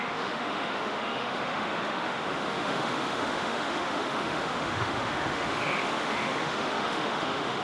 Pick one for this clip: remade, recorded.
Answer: remade